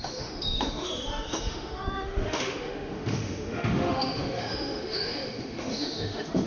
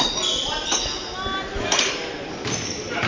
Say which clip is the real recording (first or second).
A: second